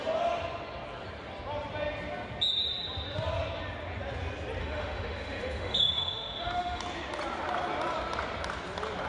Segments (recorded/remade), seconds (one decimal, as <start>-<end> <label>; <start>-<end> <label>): 0.0-4.6 recorded; 4.6-6.8 remade; 6.8-9.1 recorded